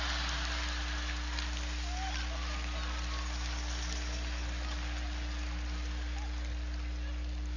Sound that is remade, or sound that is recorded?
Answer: recorded